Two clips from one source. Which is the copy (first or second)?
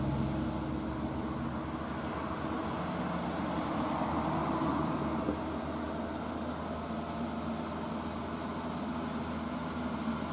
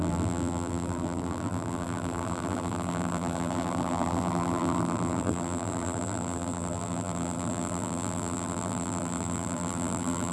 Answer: second